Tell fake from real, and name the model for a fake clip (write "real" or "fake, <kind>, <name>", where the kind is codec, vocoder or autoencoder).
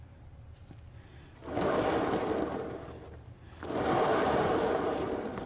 real